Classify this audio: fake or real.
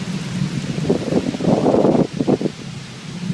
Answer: real